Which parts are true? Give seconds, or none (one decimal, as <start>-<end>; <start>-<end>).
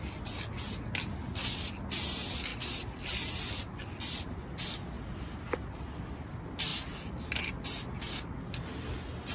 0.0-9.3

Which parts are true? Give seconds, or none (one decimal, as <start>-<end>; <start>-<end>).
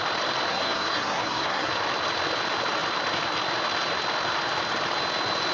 0.0-0.5; 1.7-5.5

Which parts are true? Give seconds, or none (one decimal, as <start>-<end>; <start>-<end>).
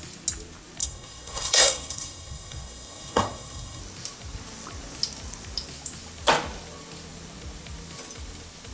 0.0-0.8; 3.8-8.7